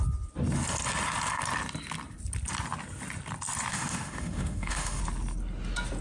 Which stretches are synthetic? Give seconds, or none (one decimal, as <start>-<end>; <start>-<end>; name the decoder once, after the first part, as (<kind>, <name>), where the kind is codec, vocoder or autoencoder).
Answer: 3.7-5.0 (autoencoder, DAC-VAE)

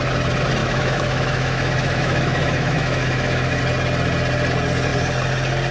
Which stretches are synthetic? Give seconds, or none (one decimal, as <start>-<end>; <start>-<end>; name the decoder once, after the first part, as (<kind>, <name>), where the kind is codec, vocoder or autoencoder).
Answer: 0.6-3.6 (autoencoder, DAC-VAE)

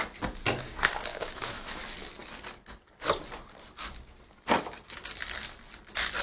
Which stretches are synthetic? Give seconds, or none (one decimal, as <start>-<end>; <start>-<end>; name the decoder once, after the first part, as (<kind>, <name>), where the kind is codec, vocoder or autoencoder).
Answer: 1.1-1.8 (autoencoder, DAC-VAE)